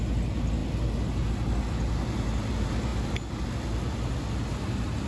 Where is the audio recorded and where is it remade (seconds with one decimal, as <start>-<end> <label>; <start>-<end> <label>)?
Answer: 0.0-5.1 recorded